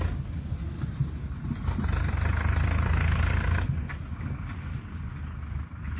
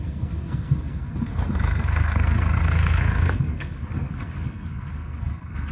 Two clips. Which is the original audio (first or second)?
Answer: first